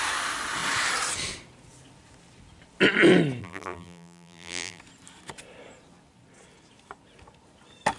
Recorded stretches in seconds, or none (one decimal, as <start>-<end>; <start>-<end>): 0.0-3.4; 4.8-8.0